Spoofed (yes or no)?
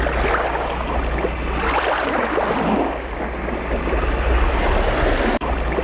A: no